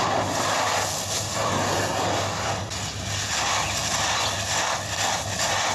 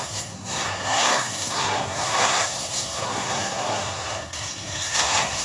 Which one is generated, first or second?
second